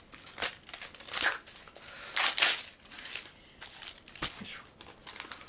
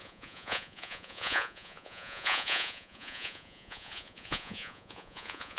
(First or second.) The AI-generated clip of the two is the second